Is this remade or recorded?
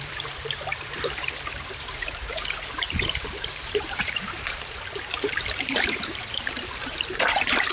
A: remade